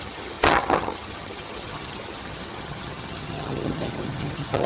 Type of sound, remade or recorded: remade